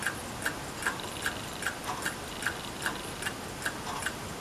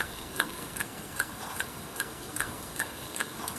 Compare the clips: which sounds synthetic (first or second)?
second